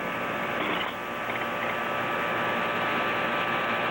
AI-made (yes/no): no